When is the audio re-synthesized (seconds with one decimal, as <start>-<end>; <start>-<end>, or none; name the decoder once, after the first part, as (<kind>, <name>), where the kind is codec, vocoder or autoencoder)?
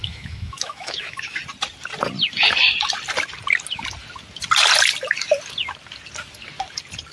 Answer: 0.0-1.4 (autoencoder, DAC-VAE)